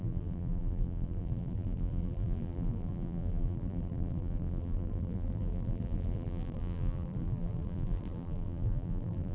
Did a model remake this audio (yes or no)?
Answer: yes